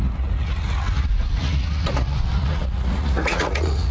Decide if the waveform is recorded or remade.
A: remade